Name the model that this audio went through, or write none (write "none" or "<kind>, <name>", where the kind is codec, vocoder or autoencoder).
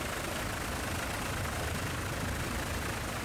none